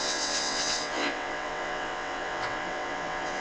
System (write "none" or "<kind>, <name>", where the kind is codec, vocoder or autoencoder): vocoder, WaveNeXt